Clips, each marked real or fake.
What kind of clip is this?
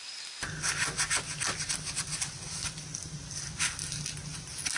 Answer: real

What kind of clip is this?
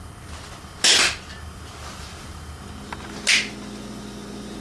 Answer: real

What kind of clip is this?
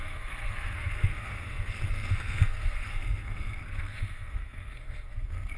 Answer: fake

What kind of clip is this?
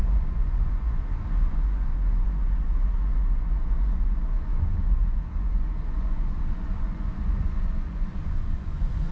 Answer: fake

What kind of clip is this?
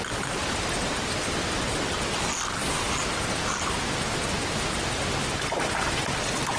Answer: real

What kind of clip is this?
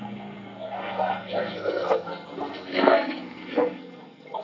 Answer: fake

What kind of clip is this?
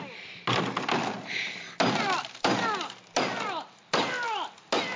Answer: real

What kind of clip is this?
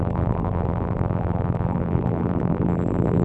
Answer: fake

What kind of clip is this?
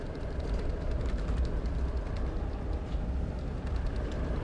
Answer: real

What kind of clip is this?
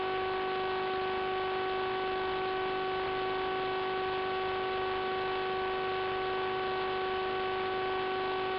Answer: real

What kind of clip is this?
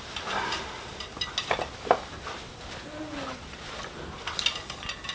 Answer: real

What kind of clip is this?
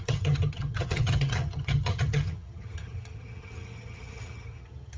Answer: fake